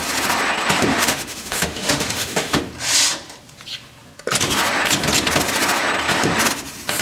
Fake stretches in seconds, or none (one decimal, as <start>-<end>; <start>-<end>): 0.9-2.6